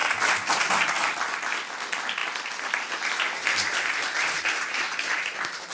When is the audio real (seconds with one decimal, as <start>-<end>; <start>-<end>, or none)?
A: 0.0-5.7